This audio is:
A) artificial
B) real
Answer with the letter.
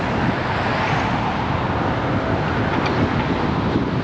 B